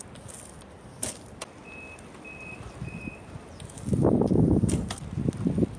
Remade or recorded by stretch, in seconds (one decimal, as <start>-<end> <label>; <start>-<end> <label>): 0.0-5.8 recorded